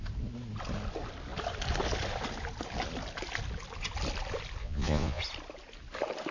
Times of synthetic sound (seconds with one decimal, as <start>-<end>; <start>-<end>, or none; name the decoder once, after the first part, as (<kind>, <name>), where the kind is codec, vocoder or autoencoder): 4.6-5.2 (vocoder, Vocos)